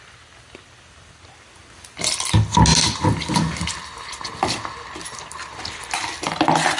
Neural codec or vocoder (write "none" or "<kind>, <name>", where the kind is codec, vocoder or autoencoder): none